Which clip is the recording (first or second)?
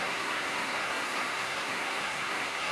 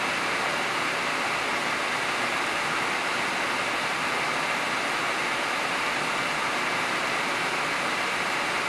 second